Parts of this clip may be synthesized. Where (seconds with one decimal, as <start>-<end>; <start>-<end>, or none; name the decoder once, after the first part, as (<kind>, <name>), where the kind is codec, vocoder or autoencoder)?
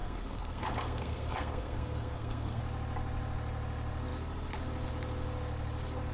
0.0-2.6 (codec, SNAC)